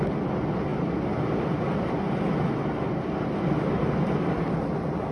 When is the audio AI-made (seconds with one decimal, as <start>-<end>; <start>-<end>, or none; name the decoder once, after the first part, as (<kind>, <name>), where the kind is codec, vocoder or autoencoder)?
none